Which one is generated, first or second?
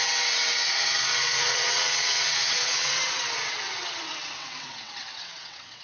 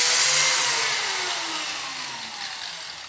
first